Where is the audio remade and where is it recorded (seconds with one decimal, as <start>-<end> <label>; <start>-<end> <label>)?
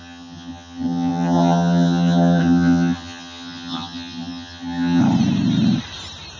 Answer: 0.0-5.0 remade; 5.0-6.4 recorded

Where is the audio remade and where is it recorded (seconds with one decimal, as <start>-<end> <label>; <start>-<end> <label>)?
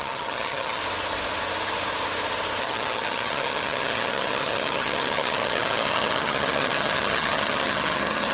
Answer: 0.0-0.8 remade; 0.8-2.6 recorded; 2.6-8.3 remade